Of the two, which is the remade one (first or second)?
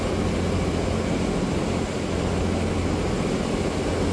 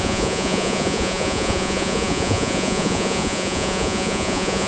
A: second